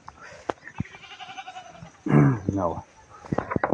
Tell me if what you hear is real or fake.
real